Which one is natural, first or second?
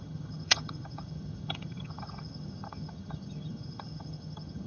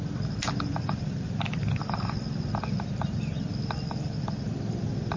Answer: second